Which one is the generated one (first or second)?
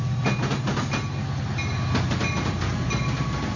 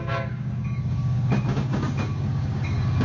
second